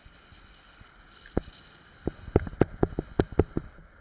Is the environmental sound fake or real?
real